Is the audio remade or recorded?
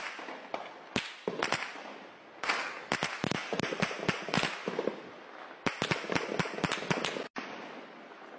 recorded